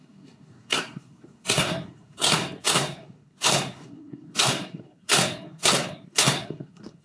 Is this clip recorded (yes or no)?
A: no